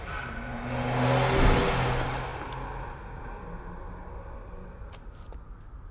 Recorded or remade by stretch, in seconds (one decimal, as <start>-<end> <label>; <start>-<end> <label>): 0.0-5.9 recorded